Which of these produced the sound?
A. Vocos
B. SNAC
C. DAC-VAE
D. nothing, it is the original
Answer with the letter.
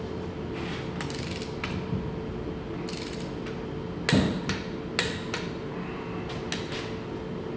D